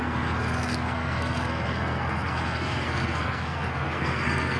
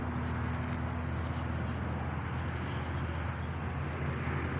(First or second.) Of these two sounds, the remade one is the first